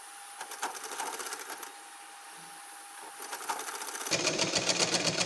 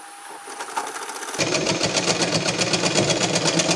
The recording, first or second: second